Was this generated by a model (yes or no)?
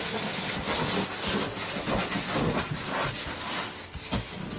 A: no